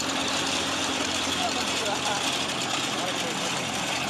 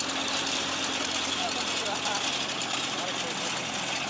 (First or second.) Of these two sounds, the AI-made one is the first